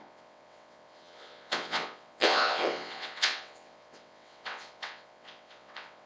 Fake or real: fake